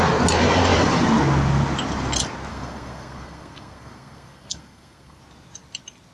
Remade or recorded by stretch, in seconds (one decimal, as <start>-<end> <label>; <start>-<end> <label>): 0.0-2.5 recorded; 2.5-5.2 remade; 5.2-6.1 recorded